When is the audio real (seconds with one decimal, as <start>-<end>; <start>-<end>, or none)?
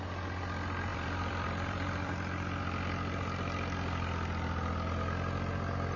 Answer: 0.0-0.9; 2.1-6.0